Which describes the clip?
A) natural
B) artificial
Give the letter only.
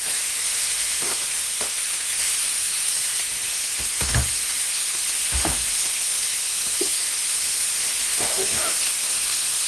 B